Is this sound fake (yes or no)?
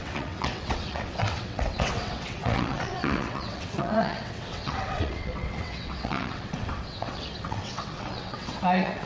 yes